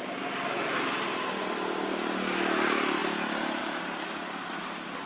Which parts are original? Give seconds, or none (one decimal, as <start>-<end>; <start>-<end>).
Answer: 0.0-5.1